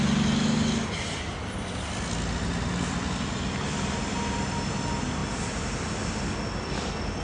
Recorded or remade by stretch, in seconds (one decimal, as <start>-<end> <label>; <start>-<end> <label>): 0.0-7.2 recorded